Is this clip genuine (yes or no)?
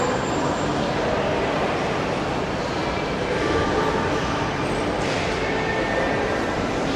yes